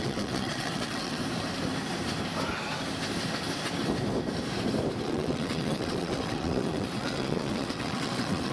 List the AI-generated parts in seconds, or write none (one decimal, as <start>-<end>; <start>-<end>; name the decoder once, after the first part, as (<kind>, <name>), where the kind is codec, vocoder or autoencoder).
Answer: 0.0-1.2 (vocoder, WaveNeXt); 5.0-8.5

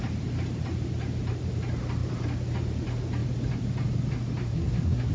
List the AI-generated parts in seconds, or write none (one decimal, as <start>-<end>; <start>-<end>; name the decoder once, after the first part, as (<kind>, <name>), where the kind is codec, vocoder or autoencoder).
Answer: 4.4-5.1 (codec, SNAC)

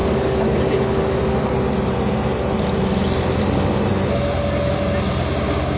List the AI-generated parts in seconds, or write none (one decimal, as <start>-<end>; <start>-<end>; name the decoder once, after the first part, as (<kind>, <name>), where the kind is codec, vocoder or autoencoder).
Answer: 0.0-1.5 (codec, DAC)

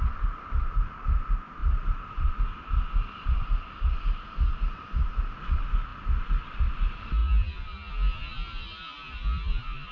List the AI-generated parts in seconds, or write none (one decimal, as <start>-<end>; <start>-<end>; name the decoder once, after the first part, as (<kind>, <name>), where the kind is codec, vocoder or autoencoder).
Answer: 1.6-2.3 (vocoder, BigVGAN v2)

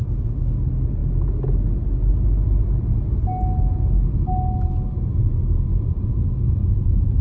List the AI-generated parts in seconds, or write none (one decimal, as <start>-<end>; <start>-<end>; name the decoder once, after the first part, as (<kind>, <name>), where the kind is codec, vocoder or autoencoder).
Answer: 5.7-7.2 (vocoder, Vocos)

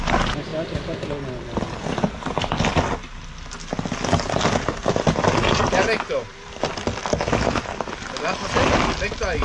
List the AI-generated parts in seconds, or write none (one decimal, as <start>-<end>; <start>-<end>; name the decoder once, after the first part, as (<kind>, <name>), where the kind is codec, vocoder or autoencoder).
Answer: none